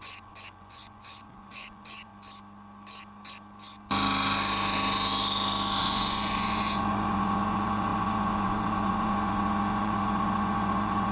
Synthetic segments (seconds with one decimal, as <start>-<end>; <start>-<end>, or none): 0.0-2.1; 5.8-11.1